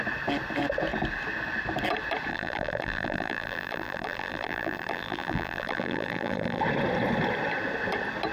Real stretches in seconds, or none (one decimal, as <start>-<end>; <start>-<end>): 0.0-2.3; 6.6-8.3